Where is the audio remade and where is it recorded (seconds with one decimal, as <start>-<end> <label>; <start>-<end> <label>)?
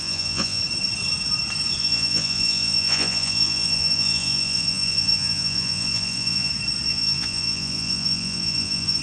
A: 0.0-0.6 remade; 0.6-1.8 recorded; 1.8-6.5 remade; 6.5-6.9 recorded; 6.9-9.0 remade